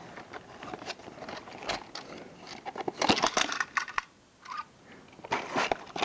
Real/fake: real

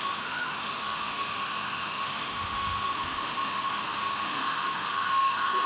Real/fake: fake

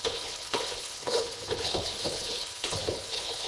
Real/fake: fake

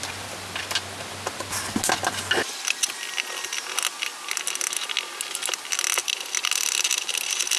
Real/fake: real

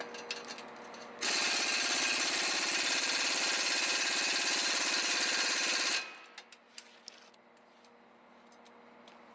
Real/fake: real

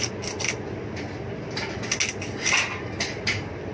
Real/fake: real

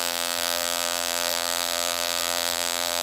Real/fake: fake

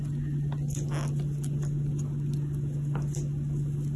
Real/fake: real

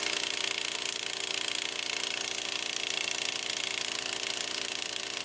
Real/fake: real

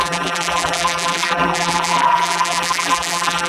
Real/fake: fake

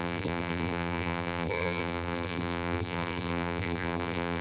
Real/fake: fake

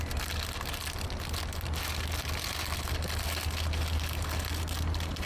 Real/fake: real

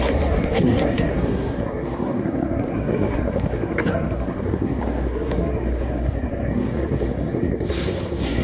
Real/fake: fake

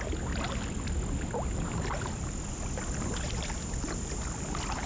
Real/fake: real